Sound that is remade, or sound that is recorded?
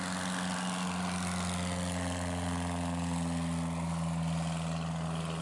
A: recorded